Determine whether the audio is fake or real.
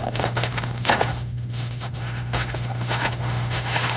fake